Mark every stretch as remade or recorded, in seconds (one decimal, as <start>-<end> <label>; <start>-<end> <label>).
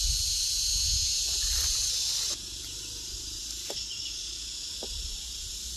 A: 0.0-3.8 recorded; 3.8-4.4 remade; 4.4-5.8 recorded